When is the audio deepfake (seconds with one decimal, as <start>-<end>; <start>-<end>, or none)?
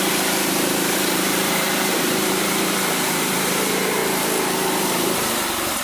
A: 0.0-4.0; 4.8-5.8